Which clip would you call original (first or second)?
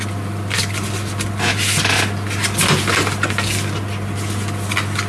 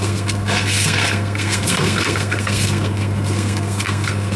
first